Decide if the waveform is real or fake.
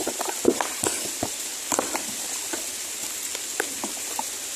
real